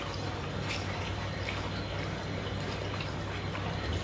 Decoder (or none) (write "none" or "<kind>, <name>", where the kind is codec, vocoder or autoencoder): none